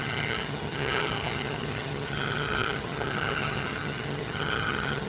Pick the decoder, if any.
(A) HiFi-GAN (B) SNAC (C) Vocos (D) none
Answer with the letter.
A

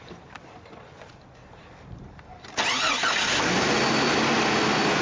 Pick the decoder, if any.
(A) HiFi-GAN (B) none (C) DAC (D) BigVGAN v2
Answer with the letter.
D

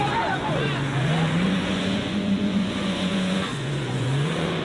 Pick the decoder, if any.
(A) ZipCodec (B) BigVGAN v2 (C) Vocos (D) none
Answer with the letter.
C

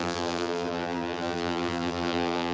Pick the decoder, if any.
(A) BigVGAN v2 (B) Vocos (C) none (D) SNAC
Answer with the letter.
A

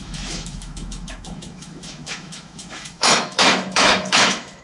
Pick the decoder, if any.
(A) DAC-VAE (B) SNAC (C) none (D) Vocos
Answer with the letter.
A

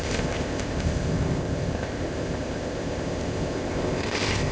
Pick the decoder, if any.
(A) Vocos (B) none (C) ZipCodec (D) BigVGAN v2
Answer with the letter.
C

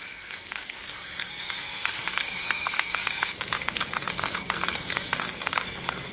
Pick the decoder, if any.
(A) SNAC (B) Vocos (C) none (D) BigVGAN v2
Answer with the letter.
A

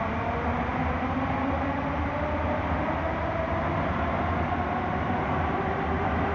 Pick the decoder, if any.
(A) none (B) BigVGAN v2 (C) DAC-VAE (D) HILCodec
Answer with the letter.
A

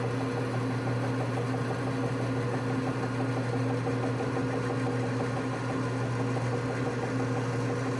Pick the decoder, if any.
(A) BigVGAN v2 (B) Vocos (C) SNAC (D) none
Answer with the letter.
D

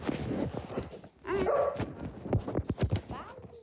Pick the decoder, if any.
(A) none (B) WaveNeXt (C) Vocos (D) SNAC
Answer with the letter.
A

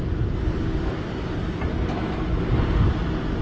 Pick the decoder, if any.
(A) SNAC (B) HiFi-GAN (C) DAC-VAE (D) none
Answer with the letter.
D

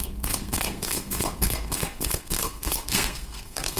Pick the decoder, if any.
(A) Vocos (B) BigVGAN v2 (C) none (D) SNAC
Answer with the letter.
D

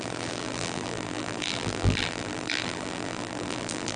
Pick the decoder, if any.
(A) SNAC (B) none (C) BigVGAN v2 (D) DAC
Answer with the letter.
C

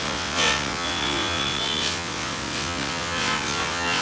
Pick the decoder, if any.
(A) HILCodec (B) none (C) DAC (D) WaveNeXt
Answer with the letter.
D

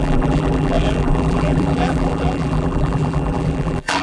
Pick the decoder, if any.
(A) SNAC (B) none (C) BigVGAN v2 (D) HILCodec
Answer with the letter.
C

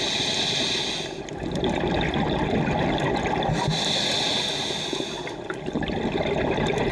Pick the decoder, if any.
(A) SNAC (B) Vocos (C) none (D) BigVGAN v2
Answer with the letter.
C